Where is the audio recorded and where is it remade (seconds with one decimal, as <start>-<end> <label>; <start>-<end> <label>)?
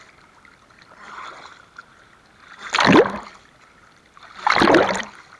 0.0-5.4 recorded